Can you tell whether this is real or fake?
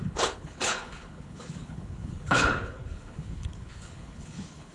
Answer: fake